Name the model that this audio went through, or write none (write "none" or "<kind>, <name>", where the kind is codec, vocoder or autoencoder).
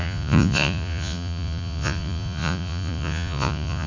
vocoder, Vocos